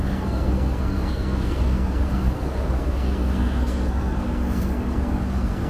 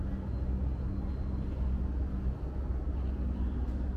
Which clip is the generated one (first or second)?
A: first